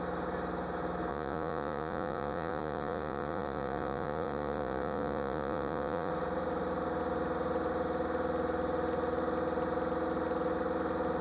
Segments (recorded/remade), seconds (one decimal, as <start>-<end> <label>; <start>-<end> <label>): 0.0-1.1 recorded; 1.1-6.1 remade; 6.1-11.2 recorded